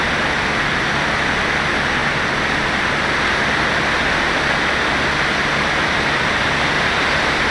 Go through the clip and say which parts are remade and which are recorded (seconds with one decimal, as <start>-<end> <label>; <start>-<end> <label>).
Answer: 0.0-7.5 recorded